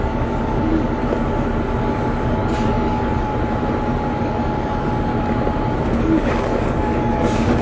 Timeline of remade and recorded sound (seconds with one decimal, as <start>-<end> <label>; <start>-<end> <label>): 0.0-1.0 remade; 1.0-1.8 recorded; 1.8-3.3 remade; 3.3-4.2 recorded; 4.2-5.1 remade; 5.1-6.0 recorded; 6.0-7.6 remade